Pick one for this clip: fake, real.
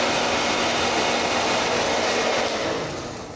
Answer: real